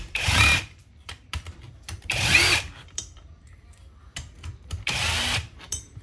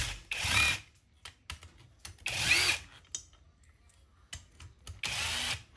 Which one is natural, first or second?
second